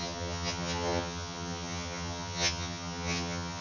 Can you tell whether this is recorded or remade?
remade